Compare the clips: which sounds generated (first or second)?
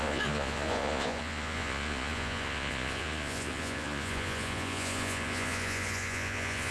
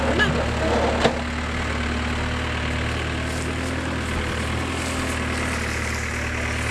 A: first